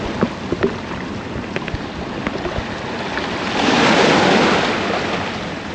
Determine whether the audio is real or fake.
real